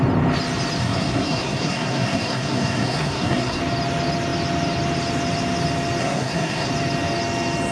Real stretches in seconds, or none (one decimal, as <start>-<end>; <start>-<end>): 0.0-0.8; 3.6-6.0; 6.7-7.7